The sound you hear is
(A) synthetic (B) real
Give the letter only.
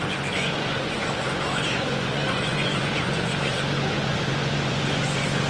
A